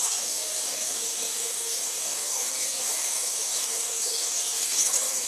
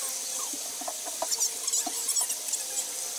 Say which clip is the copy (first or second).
first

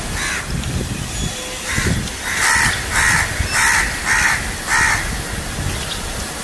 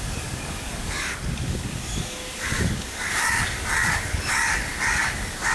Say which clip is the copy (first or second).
second